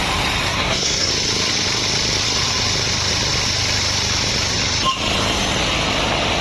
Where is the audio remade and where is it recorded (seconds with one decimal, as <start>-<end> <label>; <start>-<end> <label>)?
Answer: 0.0-0.5 recorded; 0.5-1.1 remade; 1.1-6.4 recorded